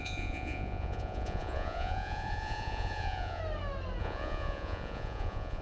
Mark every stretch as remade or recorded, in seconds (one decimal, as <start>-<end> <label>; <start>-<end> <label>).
0.0-3.4 remade; 3.4-4.0 recorded; 4.0-5.6 remade